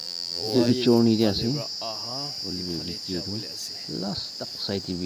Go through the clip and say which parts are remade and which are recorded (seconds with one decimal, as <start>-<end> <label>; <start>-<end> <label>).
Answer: 0.0-0.7 remade; 0.7-5.1 recorded